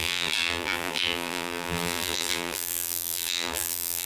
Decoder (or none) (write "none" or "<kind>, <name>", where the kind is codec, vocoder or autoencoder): vocoder, BigVGAN v2